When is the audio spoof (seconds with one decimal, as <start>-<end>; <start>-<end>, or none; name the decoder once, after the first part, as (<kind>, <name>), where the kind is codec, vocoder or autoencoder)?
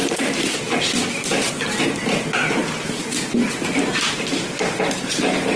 0.0-1.8 (vocoder, BigVGAN v2); 2.6-4.8